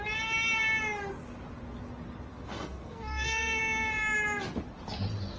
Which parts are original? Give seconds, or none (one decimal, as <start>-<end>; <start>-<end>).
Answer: 0.0-2.3; 3.6-5.4